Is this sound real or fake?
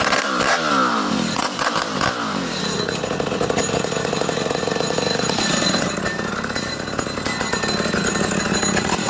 real